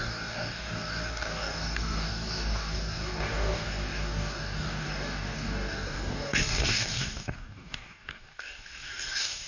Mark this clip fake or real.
fake